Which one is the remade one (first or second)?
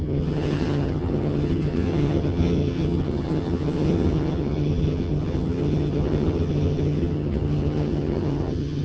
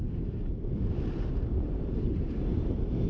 first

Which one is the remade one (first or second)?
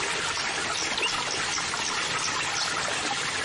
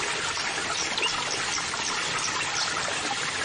second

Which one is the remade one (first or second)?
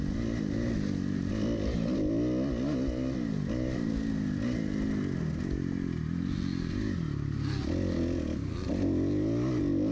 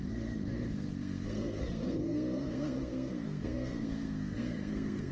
second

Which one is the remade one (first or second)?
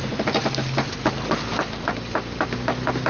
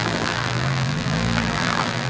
second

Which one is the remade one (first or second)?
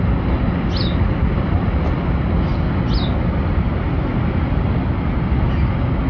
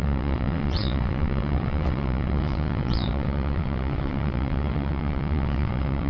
second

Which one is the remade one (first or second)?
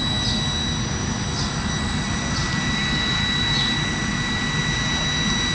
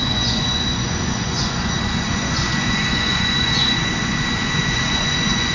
second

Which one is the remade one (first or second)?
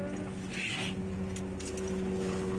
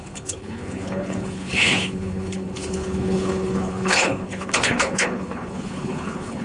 second